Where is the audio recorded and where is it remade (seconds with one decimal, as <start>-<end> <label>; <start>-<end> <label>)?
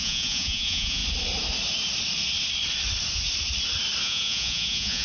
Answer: 0.0-1.0 remade; 1.0-4.0 recorded; 4.0-5.0 remade